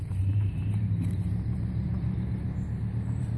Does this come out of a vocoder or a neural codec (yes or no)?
yes